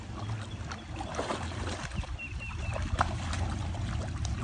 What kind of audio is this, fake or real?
real